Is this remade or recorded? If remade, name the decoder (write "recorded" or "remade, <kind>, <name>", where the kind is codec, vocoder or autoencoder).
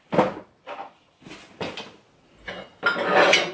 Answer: recorded